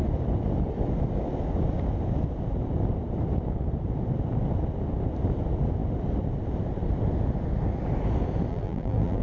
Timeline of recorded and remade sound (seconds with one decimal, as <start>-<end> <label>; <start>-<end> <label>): 0.0-8.5 recorded; 8.5-9.2 remade